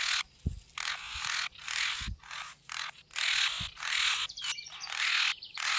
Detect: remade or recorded recorded